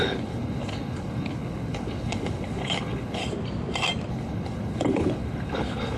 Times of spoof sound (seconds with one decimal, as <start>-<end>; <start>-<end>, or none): 0.0-3.2; 4.1-6.0